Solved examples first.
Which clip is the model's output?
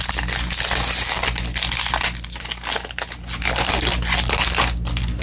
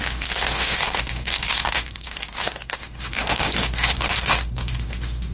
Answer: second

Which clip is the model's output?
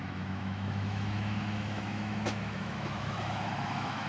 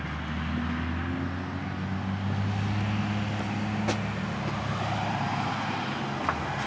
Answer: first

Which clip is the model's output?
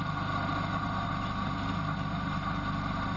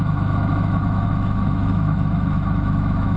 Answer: second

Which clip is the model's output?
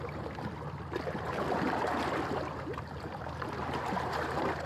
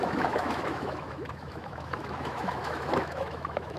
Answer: second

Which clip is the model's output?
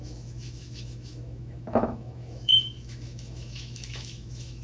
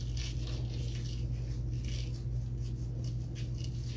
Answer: first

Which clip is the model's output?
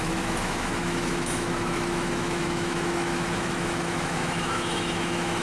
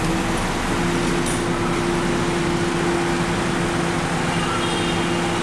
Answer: first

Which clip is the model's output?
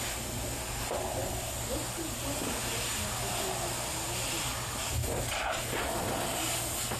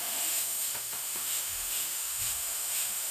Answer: second